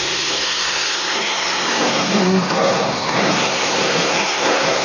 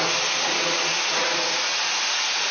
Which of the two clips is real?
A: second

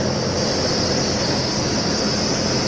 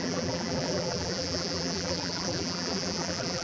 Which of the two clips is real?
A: first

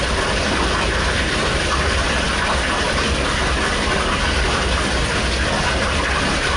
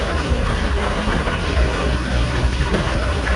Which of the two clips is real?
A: first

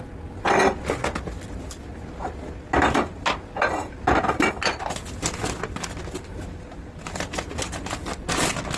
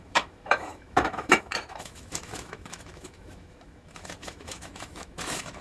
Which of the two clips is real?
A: first